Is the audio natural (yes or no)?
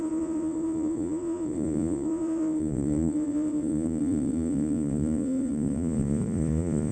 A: no